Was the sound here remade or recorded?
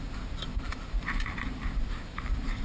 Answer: remade